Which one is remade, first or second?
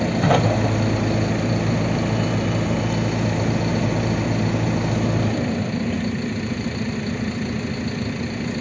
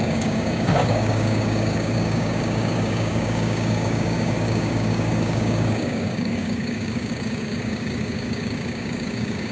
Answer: second